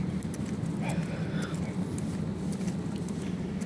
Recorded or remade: recorded